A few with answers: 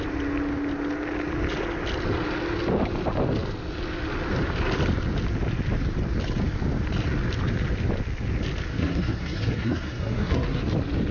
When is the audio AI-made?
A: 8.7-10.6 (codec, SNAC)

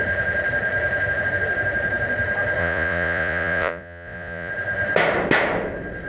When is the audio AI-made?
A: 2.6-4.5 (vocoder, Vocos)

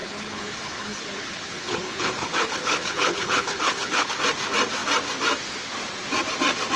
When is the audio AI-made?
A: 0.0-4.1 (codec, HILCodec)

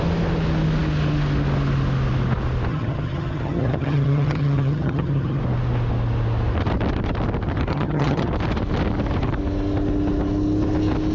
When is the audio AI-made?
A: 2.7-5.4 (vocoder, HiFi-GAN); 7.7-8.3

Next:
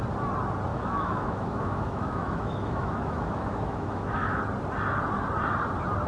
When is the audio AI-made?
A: 0.7-4.4 (autoencoder, DAC-VAE)

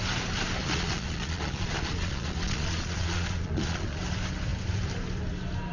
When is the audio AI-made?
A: 0.6-4.0 (vocoder, Vocos)

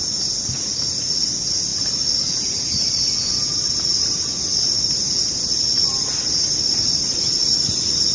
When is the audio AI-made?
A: none